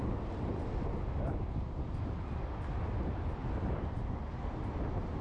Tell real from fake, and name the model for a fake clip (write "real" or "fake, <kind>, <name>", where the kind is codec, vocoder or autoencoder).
real